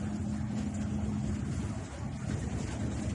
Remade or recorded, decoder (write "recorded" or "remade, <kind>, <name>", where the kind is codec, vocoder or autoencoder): recorded